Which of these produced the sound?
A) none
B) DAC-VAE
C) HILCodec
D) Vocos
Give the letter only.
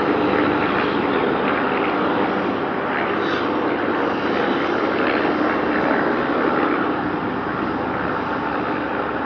A